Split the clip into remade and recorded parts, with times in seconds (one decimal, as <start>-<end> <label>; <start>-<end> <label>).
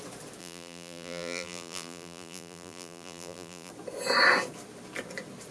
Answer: 0.0-0.4 recorded; 0.4-3.7 remade; 3.7-5.5 recorded